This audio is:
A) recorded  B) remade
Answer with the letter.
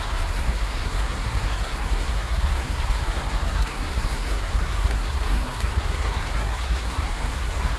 B